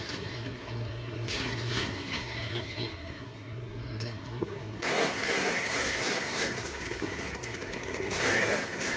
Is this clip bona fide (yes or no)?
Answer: no